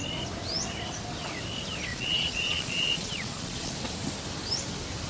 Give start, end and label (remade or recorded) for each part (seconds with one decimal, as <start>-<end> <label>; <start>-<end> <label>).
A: 0.0-1.9 recorded; 1.9-3.7 remade; 3.7-5.1 recorded